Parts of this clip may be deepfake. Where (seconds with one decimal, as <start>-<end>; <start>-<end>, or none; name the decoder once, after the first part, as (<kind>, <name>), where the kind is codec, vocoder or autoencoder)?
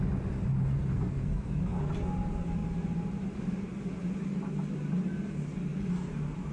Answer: 0.7-1.9 (codec, SNAC)